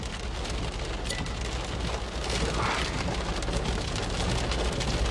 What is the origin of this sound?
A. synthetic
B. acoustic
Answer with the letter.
B